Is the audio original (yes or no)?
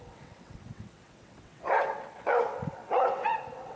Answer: no